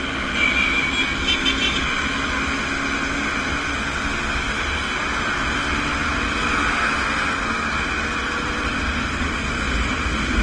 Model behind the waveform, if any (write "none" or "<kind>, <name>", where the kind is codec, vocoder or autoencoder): none